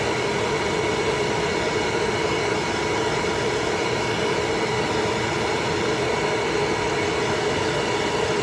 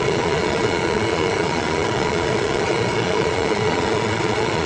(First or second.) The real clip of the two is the first